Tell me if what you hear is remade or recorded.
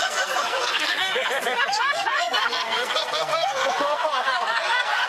remade